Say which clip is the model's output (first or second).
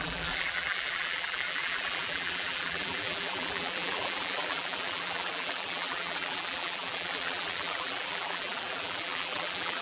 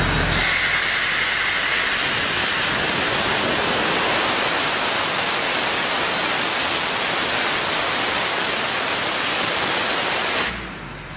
first